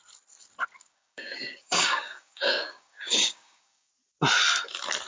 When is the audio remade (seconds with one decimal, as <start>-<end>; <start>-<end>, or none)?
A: 0.8-3.9